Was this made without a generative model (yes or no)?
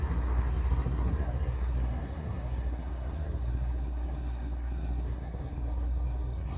no